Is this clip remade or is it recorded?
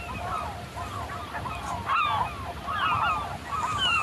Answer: recorded